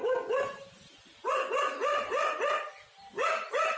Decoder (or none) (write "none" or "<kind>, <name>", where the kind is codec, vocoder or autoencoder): none